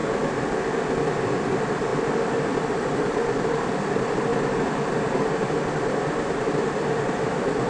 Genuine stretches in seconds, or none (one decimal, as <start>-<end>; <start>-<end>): none

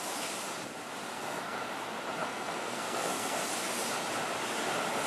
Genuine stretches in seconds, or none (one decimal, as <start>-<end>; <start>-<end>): 0.0-1.1; 1.7-2.2; 3.4-5.1

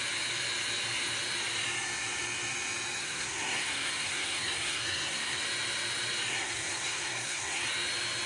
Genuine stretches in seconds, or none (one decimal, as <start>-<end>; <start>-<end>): 0.0-3.0; 5.4-6.3; 7.6-8.3

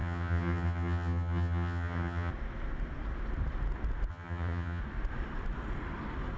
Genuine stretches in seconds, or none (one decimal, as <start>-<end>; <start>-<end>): 2.3-4.1; 4.8-6.4

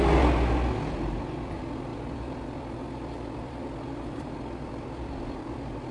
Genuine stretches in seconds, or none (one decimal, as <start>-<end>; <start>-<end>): 0.0-1.9; 5.4-5.9

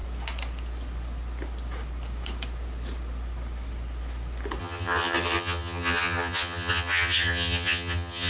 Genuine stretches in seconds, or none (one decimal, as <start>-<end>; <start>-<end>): 0.0-4.6

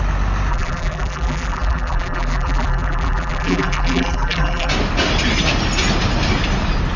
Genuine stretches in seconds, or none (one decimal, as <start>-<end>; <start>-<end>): 0.0-0.5; 4.7-7.0

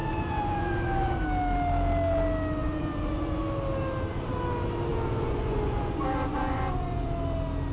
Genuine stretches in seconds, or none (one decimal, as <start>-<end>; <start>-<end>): 1.2-2.6; 3.4-4.9; 7.1-7.7